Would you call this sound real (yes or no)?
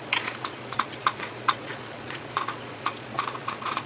no